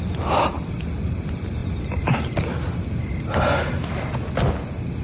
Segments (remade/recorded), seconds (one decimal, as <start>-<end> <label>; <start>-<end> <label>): 0.0-5.0 recorded